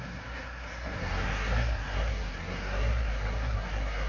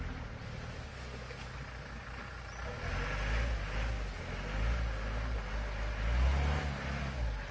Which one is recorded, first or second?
second